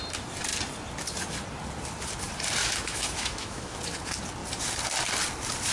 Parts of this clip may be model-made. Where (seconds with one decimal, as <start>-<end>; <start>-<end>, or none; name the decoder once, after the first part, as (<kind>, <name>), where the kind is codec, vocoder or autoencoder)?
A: 2.6-3.8 (autoencoder, DAC-VAE)